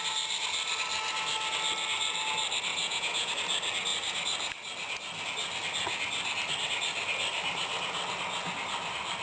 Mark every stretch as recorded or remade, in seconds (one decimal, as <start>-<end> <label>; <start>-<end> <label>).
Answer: 0.0-2.7 recorded; 2.7-3.3 remade; 3.3-9.2 recorded